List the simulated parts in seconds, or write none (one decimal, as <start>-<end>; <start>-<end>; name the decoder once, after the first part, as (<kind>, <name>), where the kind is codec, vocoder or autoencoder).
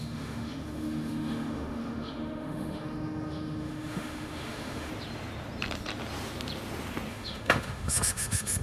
0.0-4.9 (autoencoder, DAC-VAE); 7.1-8.6